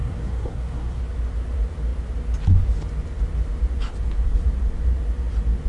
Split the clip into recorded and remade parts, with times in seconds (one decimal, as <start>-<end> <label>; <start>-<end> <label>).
0.0-1.0 remade; 1.0-5.7 recorded